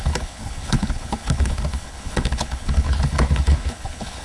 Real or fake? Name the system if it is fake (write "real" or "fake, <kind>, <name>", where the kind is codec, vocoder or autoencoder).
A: fake, codec, HILCodec